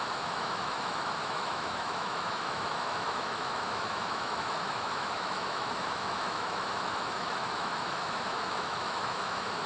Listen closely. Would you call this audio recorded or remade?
remade